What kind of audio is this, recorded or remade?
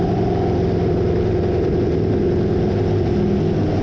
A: recorded